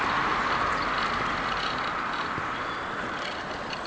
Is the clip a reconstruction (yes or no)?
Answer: no